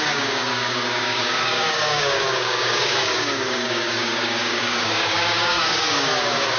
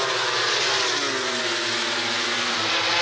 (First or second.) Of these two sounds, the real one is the second